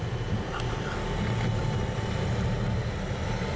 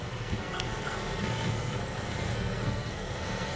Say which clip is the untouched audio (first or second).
first